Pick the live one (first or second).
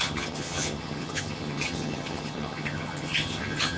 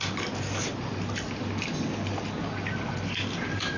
second